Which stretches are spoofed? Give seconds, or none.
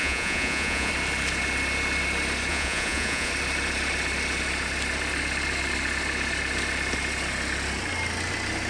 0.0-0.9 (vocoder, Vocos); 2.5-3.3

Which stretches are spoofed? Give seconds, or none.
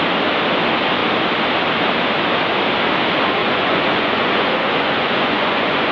3.4-5.9 (vocoder, Vocos)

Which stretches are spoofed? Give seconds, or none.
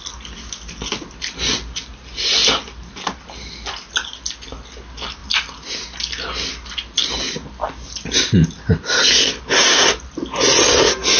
none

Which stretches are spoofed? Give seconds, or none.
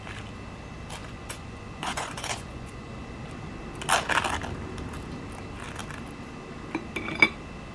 1.0-2.9 (vocoder, Vocos)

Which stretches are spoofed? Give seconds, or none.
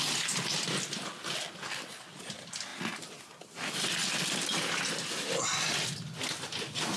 none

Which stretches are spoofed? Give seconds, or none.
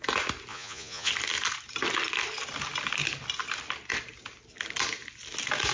0.5-1.1 (vocoder, Vocos)